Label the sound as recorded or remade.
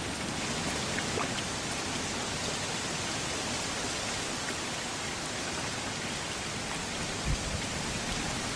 recorded